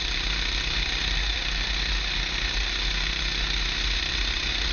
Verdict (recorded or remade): recorded